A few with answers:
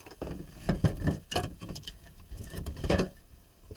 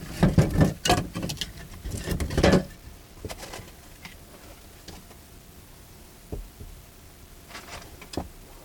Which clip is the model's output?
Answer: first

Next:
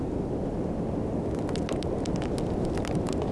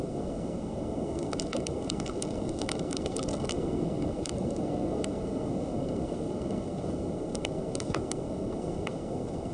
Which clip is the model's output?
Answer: second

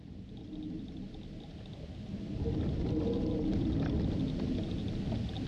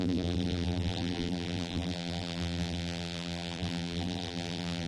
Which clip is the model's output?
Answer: second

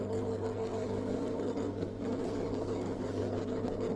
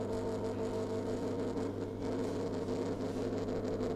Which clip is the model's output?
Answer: first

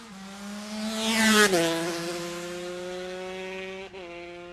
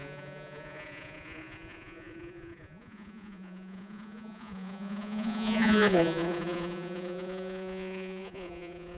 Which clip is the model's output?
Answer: second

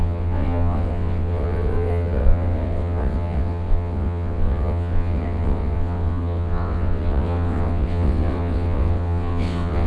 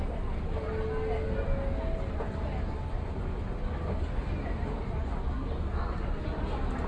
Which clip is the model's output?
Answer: first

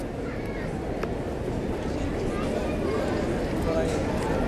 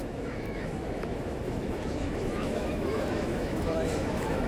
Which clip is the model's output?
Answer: second